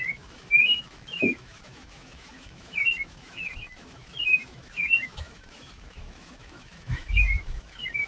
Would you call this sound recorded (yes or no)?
no